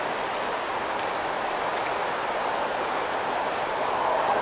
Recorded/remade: recorded